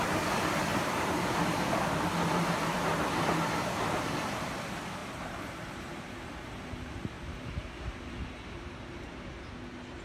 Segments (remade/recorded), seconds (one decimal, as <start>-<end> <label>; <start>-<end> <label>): 0.0-0.7 recorded; 0.7-1.4 remade; 1.4-5.0 recorded; 5.0-9.2 remade; 9.2-10.0 recorded